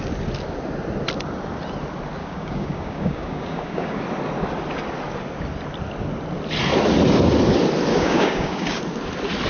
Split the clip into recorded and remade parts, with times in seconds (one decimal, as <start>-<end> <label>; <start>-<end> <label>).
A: 0.0-2.2 recorded; 2.2-4.0 remade; 4.0-7.9 recorded; 7.9-8.8 remade; 8.8-9.5 recorded